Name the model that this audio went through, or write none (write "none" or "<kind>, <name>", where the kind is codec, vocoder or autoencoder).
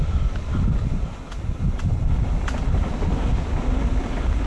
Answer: none